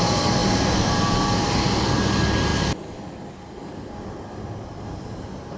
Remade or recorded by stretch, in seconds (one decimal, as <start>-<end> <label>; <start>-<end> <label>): 0.0-5.6 recorded